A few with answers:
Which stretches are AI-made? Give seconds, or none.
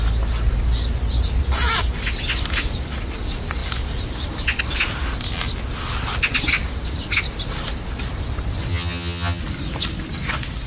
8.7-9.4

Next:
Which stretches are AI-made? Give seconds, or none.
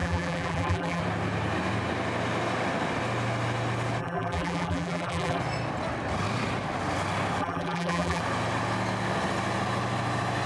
0.0-1.0; 4.0-5.4; 7.4-8.2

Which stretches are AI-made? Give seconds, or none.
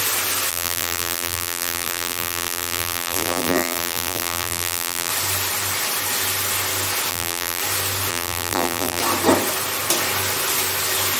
0.5-5.1; 7.1-7.6; 8.1-9.0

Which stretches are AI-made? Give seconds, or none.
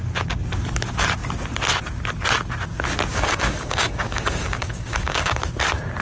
3.1-5.4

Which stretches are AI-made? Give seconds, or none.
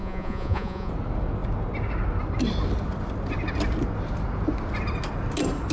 0.0-0.9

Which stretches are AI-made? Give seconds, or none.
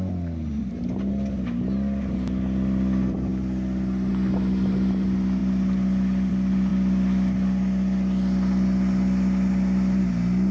none